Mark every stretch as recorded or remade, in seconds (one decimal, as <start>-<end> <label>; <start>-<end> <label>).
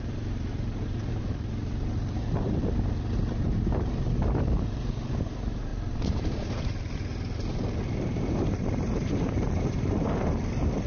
0.0-5.7 remade; 5.7-6.5 recorded; 6.5-7.1 remade; 7.1-7.9 recorded; 7.9-10.9 remade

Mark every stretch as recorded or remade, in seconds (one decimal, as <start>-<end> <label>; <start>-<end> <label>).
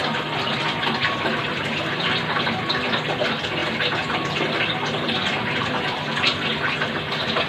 0.0-7.5 recorded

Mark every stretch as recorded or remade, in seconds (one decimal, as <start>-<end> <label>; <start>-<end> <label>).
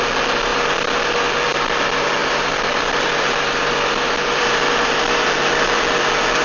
0.0-2.2 recorded; 2.2-5.0 remade; 5.0-6.4 recorded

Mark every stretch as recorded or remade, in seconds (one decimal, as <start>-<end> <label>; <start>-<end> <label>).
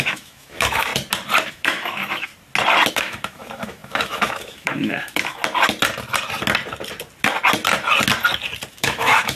0.0-0.9 remade; 0.9-1.5 recorded; 1.5-2.3 remade; 2.3-2.9 recorded; 2.9-5.4 remade; 5.4-8.7 recorded; 8.7-9.4 remade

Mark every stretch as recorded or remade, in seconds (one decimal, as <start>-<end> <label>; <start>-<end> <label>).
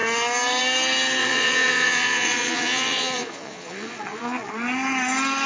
0.0-1.2 recorded; 1.2-4.5 remade; 4.5-5.5 recorded